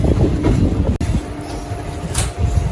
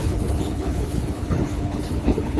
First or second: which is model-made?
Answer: second